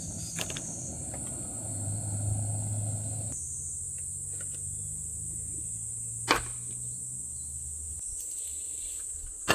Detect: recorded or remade recorded